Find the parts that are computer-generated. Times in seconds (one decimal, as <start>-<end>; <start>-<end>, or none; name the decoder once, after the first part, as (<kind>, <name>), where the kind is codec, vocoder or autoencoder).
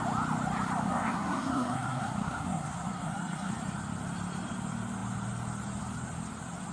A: 0.8-3.5 (codec, SNAC)